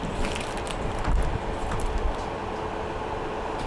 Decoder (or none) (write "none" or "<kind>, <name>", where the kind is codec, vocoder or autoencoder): none